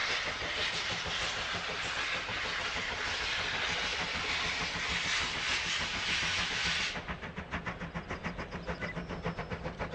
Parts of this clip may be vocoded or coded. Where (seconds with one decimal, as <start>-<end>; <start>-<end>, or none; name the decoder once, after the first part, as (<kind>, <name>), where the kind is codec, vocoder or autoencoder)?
none